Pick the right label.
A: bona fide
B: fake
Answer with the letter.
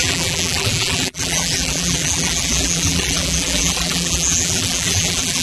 B